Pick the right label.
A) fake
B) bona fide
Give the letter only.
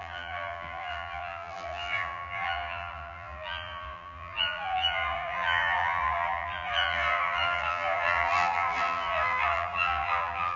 A